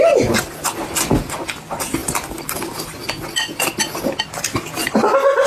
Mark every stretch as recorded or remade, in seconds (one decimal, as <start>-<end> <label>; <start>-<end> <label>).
0.0-5.5 recorded